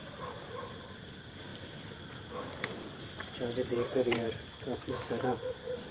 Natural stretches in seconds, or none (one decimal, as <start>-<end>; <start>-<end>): 1.1-1.5; 2.1-3.7; 4.9-5.9